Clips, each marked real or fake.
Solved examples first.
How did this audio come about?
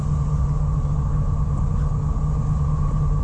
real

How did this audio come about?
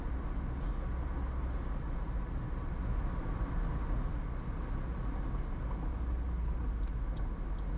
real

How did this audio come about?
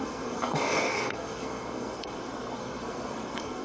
fake